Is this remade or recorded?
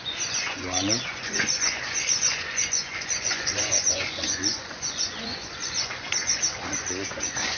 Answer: remade